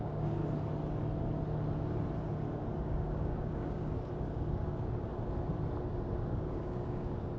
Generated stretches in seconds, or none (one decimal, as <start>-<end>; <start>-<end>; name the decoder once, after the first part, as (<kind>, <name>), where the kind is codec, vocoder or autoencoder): 0.0-0.4 (codec, DAC); 2.8-5.1; 6.2-7.4